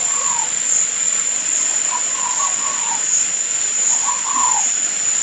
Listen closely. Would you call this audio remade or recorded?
remade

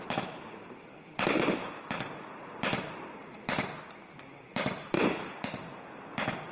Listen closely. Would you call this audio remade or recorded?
recorded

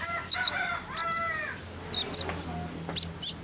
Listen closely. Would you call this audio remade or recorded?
recorded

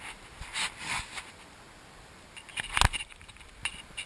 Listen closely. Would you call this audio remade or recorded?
recorded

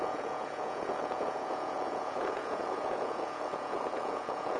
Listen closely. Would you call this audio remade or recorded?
remade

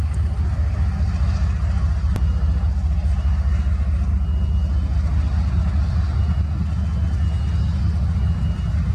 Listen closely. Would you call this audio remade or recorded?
recorded